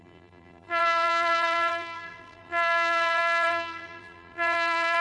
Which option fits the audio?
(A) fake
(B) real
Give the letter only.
A